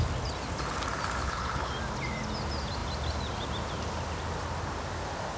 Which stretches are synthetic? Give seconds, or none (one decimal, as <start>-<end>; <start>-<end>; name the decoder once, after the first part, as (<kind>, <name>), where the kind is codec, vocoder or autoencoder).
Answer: 1.2-1.7 (codec, HILCodec)